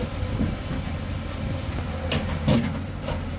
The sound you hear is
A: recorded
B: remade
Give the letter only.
A